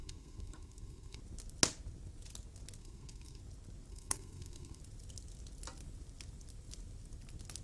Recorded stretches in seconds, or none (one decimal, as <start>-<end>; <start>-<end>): 1.2-2.8; 3.4-3.9; 4.8-7.6